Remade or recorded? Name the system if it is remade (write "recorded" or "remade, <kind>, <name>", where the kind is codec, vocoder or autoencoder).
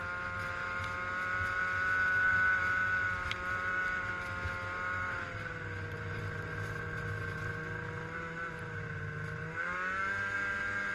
recorded